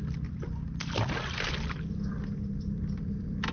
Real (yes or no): no